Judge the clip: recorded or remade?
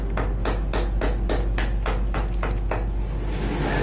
recorded